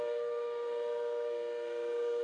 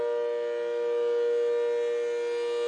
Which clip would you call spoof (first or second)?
first